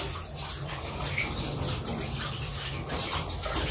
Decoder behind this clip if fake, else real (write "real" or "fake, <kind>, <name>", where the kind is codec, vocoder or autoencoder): real